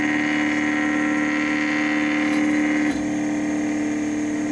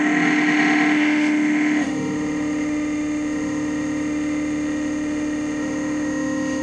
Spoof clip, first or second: second